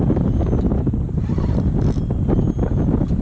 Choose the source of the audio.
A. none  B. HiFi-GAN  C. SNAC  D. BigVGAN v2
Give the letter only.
A